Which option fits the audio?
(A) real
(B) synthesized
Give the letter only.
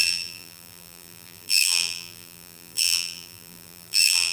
B